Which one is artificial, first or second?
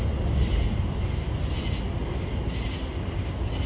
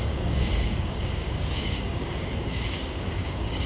second